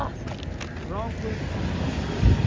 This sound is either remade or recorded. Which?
recorded